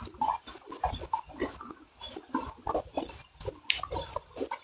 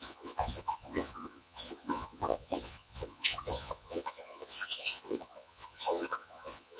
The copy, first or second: second